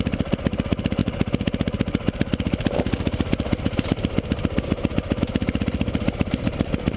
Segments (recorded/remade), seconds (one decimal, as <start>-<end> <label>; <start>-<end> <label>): 0.0-7.0 recorded